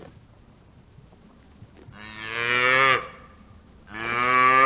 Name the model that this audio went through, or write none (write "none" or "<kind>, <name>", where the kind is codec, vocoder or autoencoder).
none